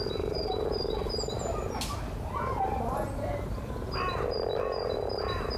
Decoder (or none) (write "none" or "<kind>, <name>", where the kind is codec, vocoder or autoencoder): none